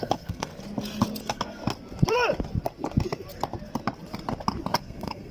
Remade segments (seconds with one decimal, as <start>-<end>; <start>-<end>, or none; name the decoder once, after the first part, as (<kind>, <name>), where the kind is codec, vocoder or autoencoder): 0.0-0.5 (codec, SNAC); 1.2-1.6; 4.8-5.3